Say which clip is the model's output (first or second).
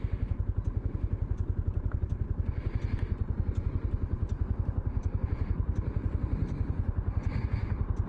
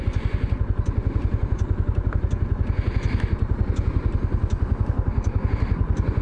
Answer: first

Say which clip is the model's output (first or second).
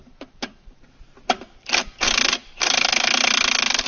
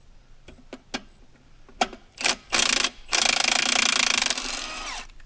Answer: first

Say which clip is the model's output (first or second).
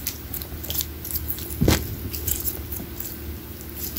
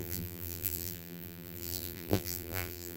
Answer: second